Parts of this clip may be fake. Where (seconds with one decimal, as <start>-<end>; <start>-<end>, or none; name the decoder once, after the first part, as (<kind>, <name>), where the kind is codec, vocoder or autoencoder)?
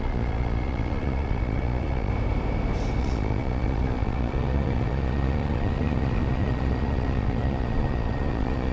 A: 0.0-2.1 (vocoder, Vocos); 3.0-8.7